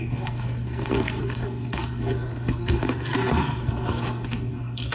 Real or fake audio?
fake